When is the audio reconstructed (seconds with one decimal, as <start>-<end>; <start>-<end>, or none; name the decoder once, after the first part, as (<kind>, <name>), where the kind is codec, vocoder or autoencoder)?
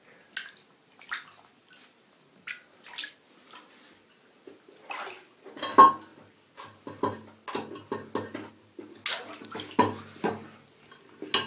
none